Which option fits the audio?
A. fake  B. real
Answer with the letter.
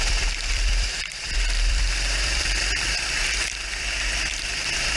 A